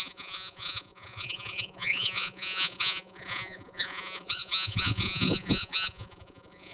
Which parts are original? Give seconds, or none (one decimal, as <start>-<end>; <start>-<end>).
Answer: none